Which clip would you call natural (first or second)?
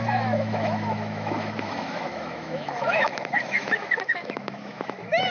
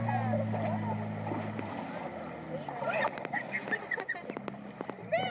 second